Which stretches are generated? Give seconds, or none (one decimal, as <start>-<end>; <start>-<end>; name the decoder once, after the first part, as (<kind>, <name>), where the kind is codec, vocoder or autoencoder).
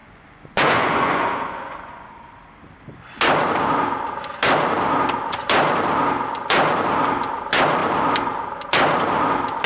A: 0.0-2.1 (vocoder, Vocos)